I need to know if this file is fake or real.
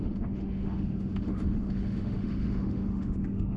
fake